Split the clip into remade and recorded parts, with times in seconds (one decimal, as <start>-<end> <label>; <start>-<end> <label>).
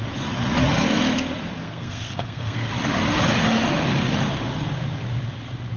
0.0-1.6 recorded; 1.6-2.7 remade; 2.7-5.8 recorded